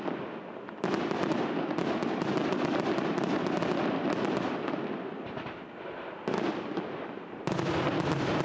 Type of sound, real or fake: real